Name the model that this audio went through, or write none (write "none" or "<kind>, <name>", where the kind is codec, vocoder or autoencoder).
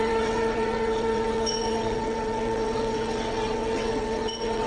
vocoder, WaveNeXt